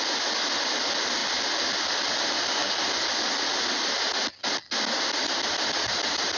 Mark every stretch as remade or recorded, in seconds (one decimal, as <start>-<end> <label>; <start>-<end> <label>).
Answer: 0.0-6.4 recorded